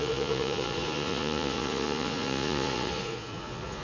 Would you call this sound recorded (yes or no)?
no